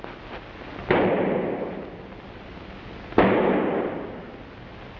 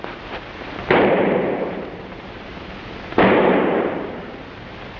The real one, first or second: first